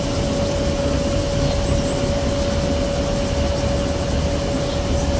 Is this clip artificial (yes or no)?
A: no